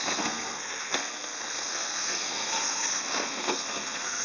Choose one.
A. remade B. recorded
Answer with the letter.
A